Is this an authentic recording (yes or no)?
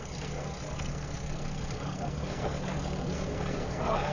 no